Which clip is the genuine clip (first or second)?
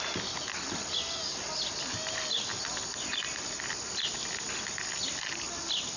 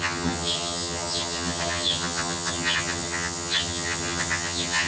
first